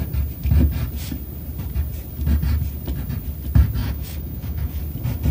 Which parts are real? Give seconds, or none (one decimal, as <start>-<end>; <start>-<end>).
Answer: 0.0-3.8; 4.8-5.3